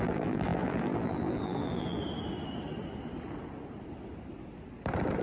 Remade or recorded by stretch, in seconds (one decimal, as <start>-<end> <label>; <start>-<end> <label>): 0.0-2.0 remade; 2.0-5.2 recorded

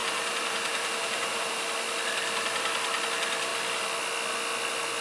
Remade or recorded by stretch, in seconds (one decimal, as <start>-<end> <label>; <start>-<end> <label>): 0.0-1.6 remade; 1.6-5.0 recorded

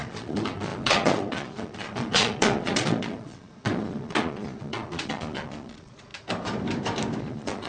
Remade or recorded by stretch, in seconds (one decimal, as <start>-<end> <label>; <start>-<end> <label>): 0.0-6.1 remade; 6.1-7.2 recorded; 7.2-7.7 remade

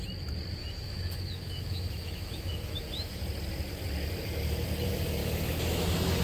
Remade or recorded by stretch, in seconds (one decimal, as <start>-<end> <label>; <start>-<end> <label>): 0.0-0.6 recorded; 0.6-3.2 remade; 3.2-5.2 recorded; 5.2-6.2 remade